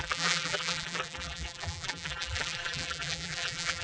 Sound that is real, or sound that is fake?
fake